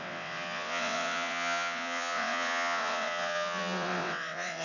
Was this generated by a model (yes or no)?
yes